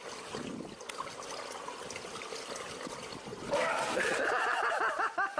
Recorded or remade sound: recorded